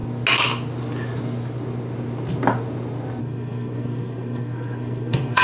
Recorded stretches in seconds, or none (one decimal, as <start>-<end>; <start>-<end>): 0.0-3.2

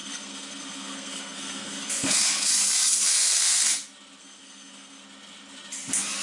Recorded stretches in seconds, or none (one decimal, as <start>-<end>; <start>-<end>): 3.7-4.2; 5.0-6.2